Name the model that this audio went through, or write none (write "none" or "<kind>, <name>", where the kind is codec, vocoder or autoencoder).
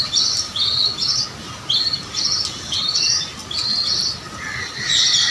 none